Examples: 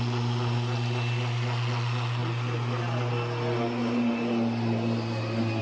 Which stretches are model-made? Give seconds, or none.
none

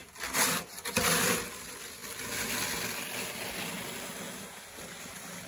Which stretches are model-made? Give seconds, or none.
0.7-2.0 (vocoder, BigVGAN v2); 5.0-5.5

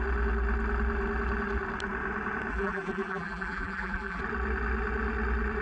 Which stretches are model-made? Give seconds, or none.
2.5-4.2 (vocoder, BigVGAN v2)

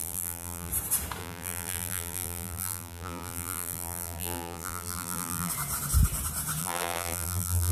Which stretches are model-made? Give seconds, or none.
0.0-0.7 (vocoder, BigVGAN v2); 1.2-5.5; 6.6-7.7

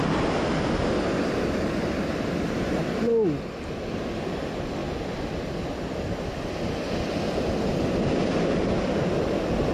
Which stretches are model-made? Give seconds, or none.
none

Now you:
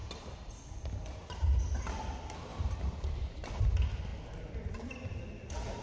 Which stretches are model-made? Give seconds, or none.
none

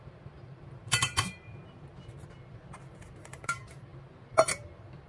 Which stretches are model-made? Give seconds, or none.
0.0-1.9 (vocoder, BigVGAN v2); 2.5-5.1

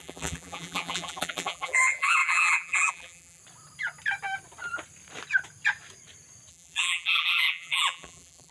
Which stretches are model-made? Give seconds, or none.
0.0-3.4 (vocoder, BigVGAN v2); 6.5-8.5